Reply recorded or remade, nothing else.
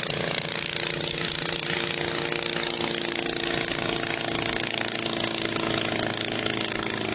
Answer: recorded